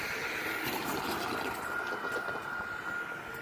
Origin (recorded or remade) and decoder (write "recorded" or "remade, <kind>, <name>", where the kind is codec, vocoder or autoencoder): recorded